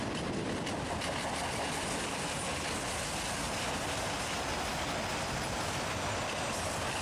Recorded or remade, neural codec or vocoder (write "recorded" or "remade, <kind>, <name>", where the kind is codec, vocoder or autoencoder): recorded